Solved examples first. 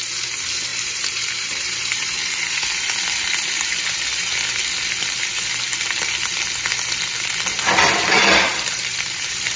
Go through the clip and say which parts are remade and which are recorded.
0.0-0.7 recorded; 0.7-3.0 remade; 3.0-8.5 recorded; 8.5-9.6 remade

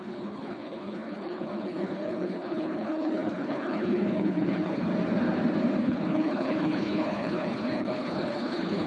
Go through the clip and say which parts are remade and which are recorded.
0.0-4.9 remade; 4.9-5.8 recorded; 5.8-8.9 remade

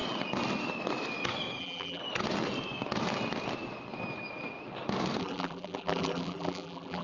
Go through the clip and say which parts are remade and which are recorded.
0.0-1.6 recorded; 1.6-2.0 remade; 2.0-5.2 recorded; 5.2-7.0 remade

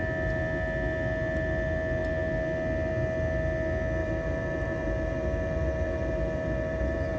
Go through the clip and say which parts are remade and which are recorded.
0.0-4.0 recorded; 4.0-7.2 remade

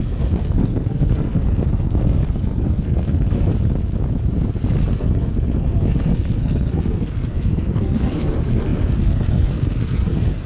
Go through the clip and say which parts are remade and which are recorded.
0.0-3.5 remade; 3.5-4.9 recorded; 4.9-10.5 remade

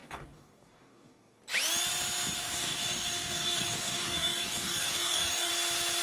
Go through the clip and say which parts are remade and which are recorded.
0.0-1.4 remade; 1.4-2.4 recorded; 2.4-5.5 remade; 5.5-6.0 recorded

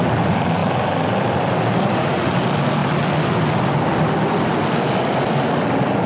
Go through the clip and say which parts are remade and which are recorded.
0.0-6.1 recorded